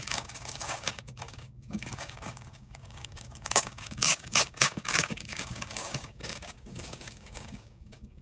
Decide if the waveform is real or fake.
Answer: fake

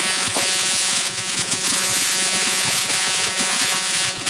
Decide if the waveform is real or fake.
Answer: fake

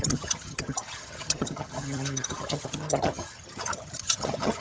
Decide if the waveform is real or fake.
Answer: fake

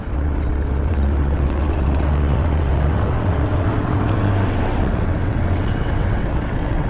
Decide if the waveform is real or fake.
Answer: fake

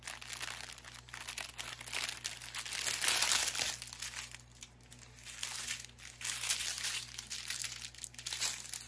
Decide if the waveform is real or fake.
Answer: real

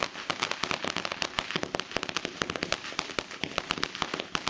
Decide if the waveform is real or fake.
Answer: real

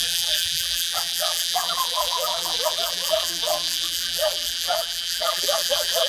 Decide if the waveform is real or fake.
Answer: fake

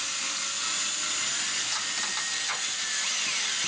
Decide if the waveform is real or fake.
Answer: real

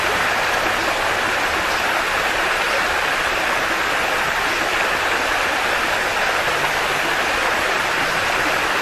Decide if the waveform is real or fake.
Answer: real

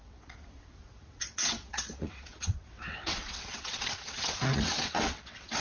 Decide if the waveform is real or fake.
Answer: fake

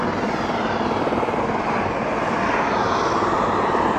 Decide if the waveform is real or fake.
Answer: real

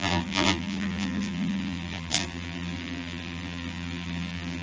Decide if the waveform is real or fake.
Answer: fake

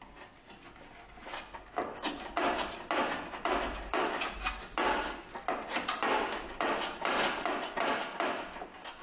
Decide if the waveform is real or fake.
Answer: real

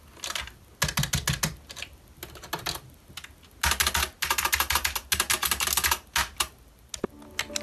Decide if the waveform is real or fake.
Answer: real